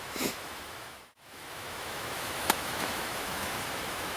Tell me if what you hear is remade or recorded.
remade